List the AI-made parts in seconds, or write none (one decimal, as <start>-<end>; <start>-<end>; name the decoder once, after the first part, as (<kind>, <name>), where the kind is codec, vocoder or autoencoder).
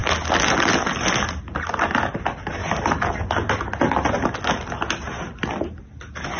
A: none